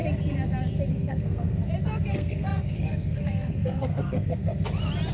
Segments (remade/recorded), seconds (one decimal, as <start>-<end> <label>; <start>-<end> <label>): 0.0-0.9 recorded; 0.9-1.6 remade; 1.6-2.1 recorded; 2.1-4.5 remade; 4.5-5.1 recorded